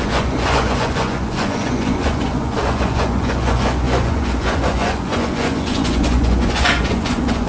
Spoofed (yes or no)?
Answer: yes